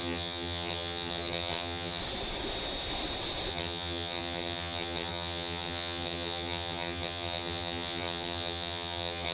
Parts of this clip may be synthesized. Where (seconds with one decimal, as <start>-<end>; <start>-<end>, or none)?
0.0-2.0; 3.5-9.3